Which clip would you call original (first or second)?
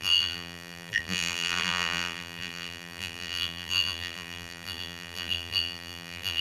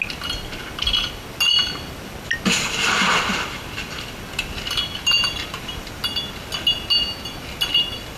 second